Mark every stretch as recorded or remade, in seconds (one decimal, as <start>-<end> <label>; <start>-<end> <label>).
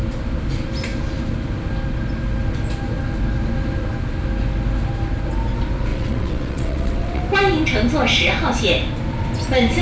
0.0-5.9 recorded; 5.9-7.2 remade; 7.2-9.8 recorded